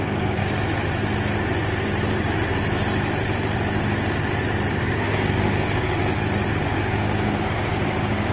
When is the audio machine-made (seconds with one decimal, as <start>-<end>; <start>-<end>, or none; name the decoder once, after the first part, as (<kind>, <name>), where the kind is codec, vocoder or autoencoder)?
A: 0.0-0.4 (codec, DAC); 4.7-6.0; 6.5-8.3